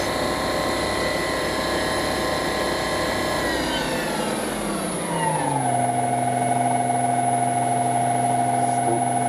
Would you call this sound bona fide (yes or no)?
yes